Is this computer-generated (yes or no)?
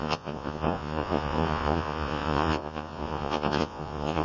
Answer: yes